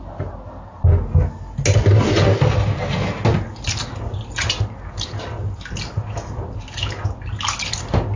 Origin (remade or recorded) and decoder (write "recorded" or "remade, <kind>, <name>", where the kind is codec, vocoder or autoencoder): recorded